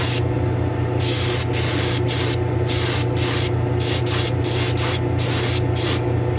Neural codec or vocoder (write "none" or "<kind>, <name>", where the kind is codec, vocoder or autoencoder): none